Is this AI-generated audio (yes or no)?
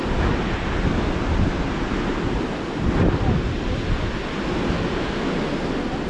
no